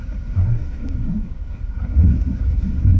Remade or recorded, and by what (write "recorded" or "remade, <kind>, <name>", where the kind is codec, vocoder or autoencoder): remade, codec, SNAC